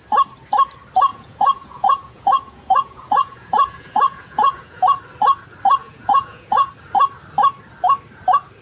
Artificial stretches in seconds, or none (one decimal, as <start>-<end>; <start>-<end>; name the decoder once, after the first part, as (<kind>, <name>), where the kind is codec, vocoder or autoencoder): 1.1-5.0 (vocoder, Vocos); 5.8-6.7